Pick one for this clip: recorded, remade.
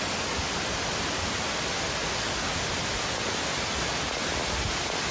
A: recorded